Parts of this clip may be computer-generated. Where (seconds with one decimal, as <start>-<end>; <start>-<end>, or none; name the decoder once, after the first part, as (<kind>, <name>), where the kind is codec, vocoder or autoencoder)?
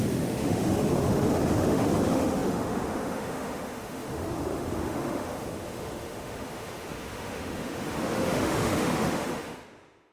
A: 0.0-10.1 (autoencoder, DAC-VAE)